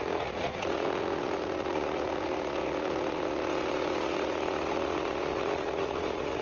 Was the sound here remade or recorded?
remade